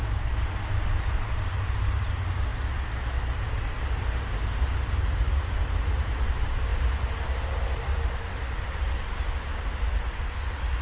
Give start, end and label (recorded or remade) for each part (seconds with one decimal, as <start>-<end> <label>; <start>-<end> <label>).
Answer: 0.0-10.8 recorded